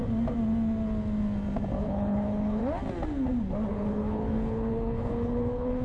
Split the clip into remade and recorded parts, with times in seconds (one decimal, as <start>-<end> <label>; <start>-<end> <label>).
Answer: 0.0-1.8 recorded; 1.8-2.6 remade; 2.6-3.7 recorded; 3.7-5.8 remade